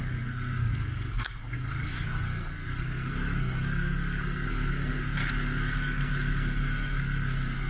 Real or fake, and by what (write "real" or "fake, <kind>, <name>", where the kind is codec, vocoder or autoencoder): fake, codec, SNAC